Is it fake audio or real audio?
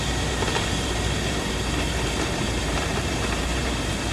fake